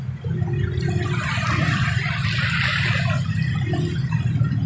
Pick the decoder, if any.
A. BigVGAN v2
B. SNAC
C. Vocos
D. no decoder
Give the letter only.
D